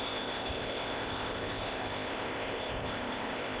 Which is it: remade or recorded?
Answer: remade